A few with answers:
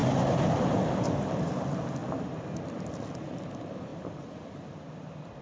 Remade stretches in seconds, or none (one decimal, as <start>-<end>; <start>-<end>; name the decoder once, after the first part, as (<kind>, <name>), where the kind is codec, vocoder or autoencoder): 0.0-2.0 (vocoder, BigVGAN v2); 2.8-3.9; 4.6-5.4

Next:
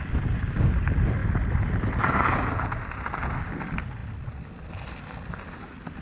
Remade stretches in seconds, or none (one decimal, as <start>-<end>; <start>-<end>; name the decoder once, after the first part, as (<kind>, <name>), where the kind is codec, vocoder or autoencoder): 1.2-2.8 (vocoder, BigVGAN v2)

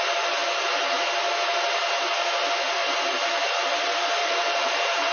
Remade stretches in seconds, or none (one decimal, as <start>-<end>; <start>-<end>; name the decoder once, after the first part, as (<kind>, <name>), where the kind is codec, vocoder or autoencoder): 2.8-3.5 (vocoder, BigVGAN v2); 4.2-5.1

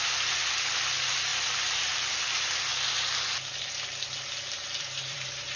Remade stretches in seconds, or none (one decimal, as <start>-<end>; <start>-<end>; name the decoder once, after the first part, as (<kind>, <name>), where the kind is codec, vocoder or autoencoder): 0.0-1.3 (vocoder, BigVGAN v2); 2.2-2.7; 4.8-5.6